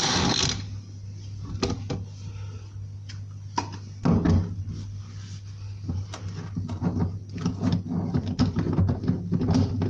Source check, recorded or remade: recorded